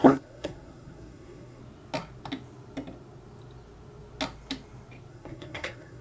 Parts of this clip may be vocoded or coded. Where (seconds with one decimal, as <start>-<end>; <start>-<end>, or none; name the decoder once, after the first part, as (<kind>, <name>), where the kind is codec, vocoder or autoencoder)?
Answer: 0.0-1.6 (codec, SNAC); 5.1-6.0

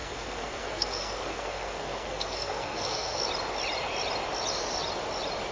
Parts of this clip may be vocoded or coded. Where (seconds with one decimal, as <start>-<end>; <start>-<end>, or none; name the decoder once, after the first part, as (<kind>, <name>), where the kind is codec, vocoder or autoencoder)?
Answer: 0.0-3.2 (codec, SNAC)